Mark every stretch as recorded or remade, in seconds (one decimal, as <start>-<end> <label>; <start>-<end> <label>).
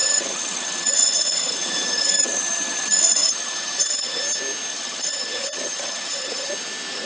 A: 0.0-4.2 remade; 4.2-4.7 recorded; 4.7-6.5 remade; 6.5-7.1 recorded